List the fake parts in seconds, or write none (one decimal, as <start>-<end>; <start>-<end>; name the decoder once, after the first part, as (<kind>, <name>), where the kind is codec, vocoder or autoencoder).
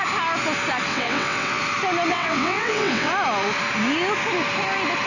0.9-1.6 (vocoder, WaveNeXt); 2.1-3.1